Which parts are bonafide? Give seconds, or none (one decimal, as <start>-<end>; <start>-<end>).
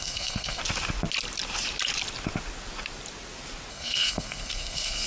0.6-3.7